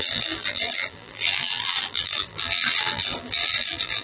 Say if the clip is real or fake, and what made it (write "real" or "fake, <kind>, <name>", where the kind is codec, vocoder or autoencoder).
fake, vocoder, BigVGAN v2